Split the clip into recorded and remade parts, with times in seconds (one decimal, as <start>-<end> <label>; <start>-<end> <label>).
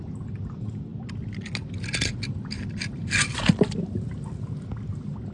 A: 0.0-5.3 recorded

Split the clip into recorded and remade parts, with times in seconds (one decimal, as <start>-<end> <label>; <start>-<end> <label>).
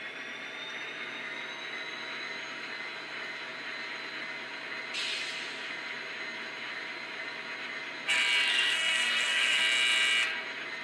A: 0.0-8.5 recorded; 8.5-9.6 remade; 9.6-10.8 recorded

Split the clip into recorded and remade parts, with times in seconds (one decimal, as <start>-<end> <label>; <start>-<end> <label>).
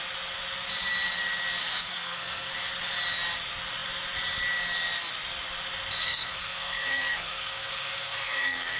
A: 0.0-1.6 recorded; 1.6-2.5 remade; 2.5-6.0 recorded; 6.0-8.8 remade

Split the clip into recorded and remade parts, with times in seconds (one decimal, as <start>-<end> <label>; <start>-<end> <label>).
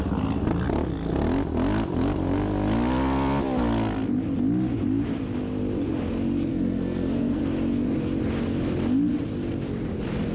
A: 0.0-6.5 recorded; 6.5-7.4 remade; 7.4-10.3 recorded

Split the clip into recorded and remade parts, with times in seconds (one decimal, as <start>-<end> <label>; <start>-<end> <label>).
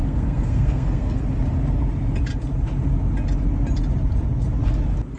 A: 0.0-1.2 remade; 1.2-5.2 recorded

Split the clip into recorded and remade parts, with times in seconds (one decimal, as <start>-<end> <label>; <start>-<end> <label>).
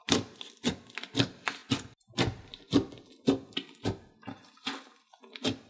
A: 0.0-5.7 recorded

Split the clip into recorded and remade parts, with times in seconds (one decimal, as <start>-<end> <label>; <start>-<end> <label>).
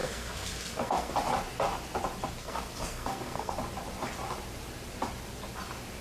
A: 0.0-1.1 remade; 1.1-2.4 recorded; 2.4-3.5 remade; 3.5-6.0 recorded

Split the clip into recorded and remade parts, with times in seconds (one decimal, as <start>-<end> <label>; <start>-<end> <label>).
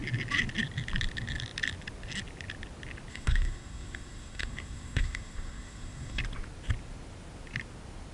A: 0.0-3.1 recorded; 3.1-6.2 remade; 6.2-8.1 recorded